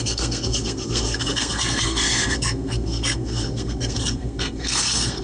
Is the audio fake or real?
fake